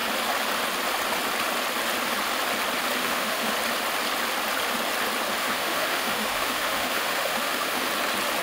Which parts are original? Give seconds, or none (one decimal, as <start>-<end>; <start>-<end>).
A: 0.0-3.0; 3.5-5.4; 7.9-8.4